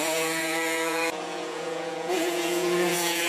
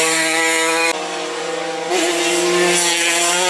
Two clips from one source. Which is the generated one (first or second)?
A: first